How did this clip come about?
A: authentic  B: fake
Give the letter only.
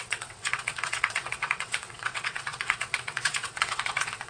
B